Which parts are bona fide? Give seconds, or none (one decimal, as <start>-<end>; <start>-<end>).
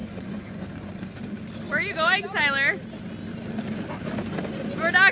0.9-5.1